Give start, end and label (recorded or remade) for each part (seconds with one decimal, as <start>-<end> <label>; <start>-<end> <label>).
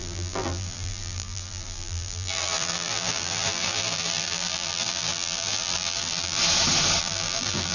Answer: 0.0-6.4 remade; 6.4-7.0 recorded; 7.0-7.7 remade